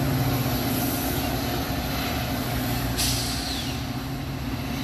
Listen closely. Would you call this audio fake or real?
real